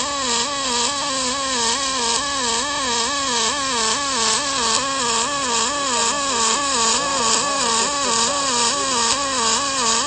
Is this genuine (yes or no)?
yes